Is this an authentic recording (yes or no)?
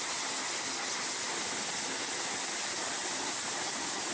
yes